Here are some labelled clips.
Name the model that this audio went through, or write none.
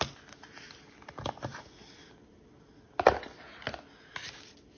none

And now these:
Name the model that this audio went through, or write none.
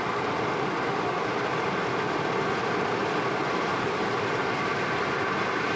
none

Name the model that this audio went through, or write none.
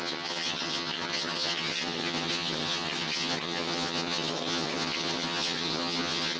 vocoder, HiFi-GAN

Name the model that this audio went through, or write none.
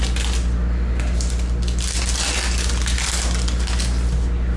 none